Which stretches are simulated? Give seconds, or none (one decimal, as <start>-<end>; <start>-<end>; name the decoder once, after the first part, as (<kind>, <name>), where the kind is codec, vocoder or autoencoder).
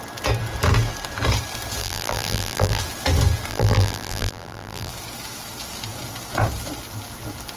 1.8-2.8 (vocoder, BigVGAN v2); 3.5-4.9